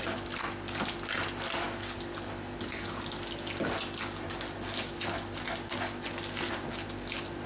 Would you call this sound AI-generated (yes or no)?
no